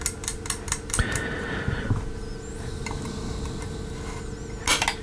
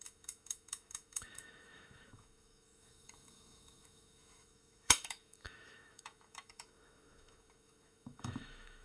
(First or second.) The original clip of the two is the first